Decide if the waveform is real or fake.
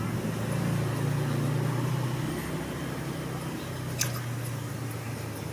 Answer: real